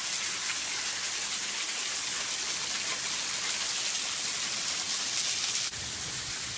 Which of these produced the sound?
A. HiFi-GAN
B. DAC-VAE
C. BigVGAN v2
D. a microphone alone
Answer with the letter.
D